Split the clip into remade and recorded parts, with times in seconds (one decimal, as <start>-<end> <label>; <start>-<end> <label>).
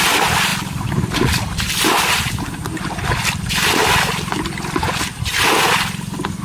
0.0-0.5 recorded; 0.5-3.8 remade; 3.8-6.4 recorded